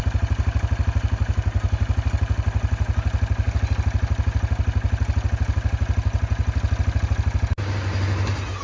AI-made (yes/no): no